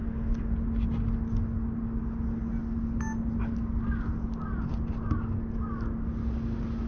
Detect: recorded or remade recorded